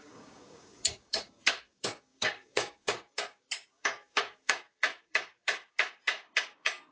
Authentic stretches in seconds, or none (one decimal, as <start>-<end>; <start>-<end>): none